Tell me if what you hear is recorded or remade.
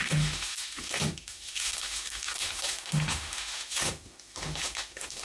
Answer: remade